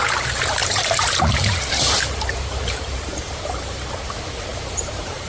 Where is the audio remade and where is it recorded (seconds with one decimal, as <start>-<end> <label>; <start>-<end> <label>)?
0.0-0.6 recorded; 0.6-3.8 remade; 3.8-4.5 recorded; 4.5-5.3 remade